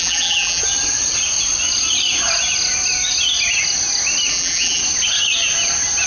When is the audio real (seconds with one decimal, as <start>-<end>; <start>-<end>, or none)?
0.6-4.3; 4.8-6.1